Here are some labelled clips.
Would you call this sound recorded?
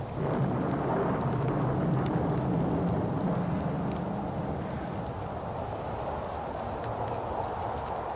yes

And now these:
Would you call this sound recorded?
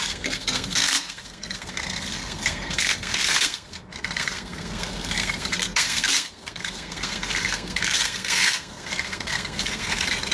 no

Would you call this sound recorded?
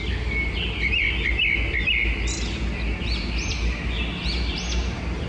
yes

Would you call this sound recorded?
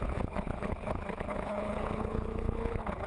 no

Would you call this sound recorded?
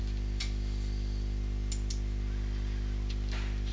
yes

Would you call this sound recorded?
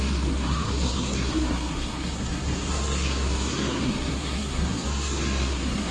no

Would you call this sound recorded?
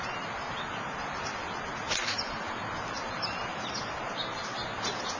yes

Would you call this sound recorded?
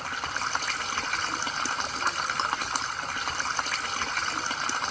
yes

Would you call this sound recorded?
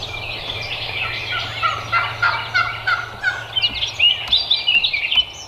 yes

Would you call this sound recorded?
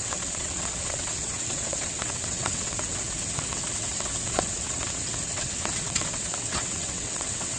no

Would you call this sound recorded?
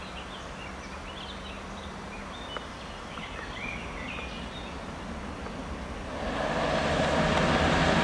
yes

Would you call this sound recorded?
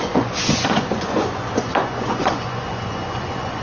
no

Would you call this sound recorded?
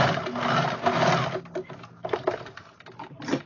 yes